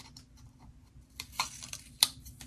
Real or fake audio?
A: real